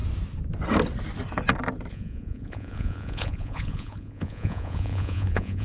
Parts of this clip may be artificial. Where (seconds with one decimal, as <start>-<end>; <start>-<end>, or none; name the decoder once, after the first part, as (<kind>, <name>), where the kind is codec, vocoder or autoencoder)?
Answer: 1.9-5.6 (vocoder, Vocos)